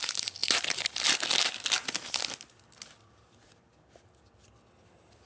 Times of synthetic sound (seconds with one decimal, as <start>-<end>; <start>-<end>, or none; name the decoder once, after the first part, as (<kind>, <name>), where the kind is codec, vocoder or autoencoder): none